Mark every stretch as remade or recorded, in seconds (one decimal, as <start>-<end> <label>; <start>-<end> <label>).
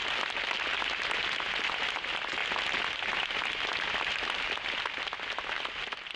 0.0-6.2 recorded